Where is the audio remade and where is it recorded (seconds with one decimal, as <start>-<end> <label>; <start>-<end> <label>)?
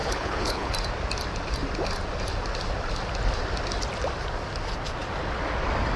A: 0.0-0.7 remade; 0.7-6.0 recorded